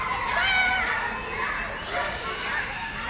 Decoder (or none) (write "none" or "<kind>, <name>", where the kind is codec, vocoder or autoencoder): none